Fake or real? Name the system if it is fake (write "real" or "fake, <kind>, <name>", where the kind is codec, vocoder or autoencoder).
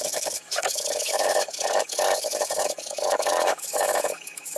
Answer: fake, autoencoder, DAC-VAE